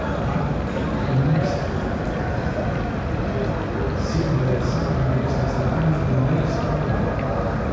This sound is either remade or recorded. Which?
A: recorded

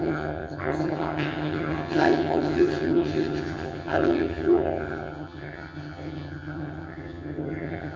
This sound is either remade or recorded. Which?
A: remade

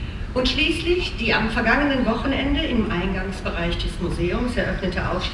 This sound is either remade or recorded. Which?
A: recorded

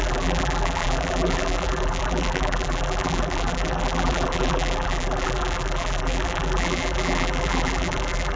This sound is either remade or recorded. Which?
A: remade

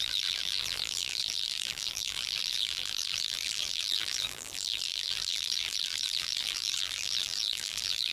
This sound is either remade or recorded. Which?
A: remade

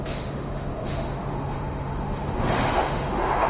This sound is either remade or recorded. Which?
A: remade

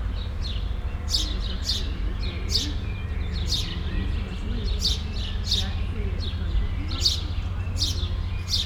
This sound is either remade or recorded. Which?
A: recorded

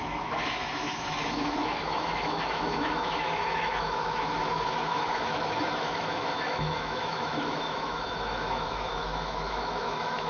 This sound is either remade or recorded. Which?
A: remade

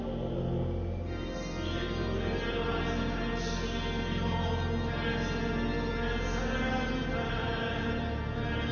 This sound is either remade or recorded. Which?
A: recorded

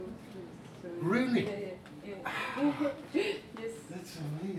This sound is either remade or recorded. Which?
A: recorded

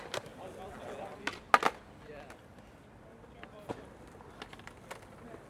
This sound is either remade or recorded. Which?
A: recorded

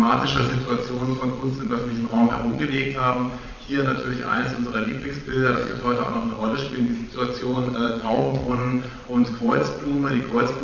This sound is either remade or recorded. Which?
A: remade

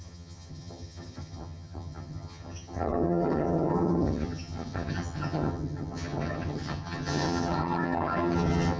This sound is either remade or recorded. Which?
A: remade